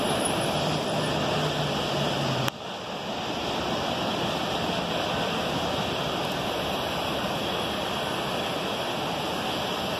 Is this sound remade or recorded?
recorded